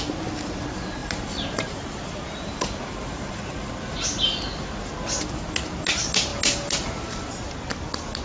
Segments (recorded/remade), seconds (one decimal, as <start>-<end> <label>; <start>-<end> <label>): 0.0-1.0 recorded; 1.0-3.7 remade; 3.7-8.2 recorded